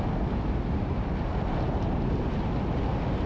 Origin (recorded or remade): recorded